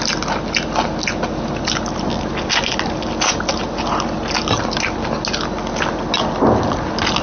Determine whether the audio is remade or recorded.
recorded